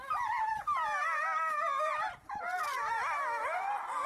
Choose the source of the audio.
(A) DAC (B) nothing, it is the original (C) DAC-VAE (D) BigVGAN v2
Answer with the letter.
B